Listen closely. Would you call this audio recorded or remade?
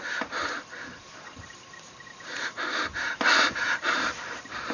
remade